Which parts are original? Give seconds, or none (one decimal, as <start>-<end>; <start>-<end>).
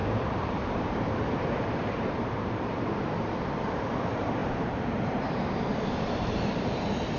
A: none